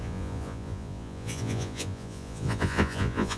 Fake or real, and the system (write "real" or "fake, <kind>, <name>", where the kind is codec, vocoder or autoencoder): fake, vocoder, Vocos